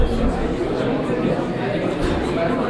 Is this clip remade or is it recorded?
recorded